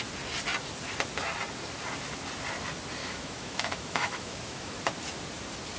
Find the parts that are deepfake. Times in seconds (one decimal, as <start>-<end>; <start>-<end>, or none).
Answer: 3.0-4.8